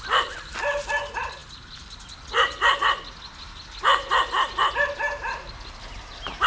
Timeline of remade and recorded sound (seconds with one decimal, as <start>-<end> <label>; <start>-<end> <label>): 0.0-6.5 recorded